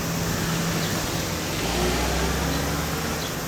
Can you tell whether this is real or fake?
real